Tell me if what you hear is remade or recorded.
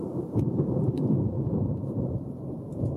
remade